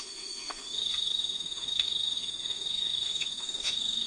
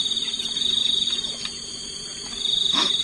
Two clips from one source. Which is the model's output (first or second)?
first